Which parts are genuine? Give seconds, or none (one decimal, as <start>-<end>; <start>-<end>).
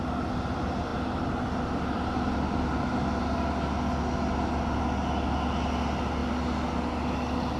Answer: 0.0-7.6